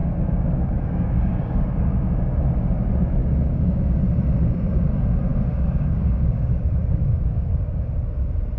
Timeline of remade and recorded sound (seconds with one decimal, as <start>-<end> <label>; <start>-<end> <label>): 0.0-2.4 remade; 2.4-3.2 recorded; 3.2-3.8 remade; 3.8-5.3 recorded; 5.3-7.9 remade; 7.9-8.6 recorded